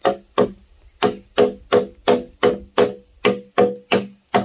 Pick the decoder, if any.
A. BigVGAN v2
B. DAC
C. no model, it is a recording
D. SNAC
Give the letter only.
C